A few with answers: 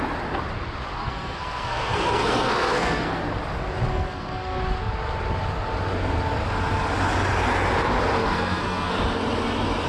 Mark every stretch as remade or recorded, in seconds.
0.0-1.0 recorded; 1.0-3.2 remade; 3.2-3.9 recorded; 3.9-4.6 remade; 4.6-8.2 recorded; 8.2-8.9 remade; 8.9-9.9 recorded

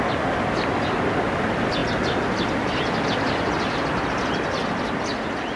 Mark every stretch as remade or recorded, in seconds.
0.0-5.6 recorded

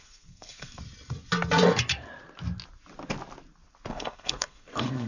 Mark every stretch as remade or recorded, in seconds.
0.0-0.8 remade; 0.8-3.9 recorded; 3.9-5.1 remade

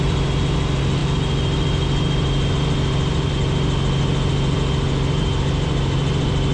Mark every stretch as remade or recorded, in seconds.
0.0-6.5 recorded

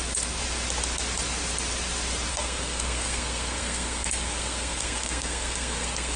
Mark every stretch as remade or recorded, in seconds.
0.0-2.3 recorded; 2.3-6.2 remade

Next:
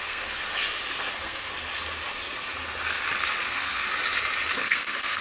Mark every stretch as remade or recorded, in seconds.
0.0-0.4 remade; 0.4-1.1 recorded; 1.1-1.5 remade; 1.5-3.4 recorded; 3.4-3.8 remade; 3.8-4.5 recorded; 4.5-5.2 remade

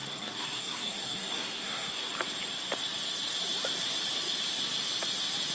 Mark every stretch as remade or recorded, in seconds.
0.0-2.1 remade; 2.1-5.5 recorded

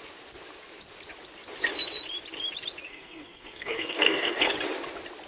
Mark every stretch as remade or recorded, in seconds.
0.0-2.9 recorded; 2.9-4.5 remade; 4.5-5.3 recorded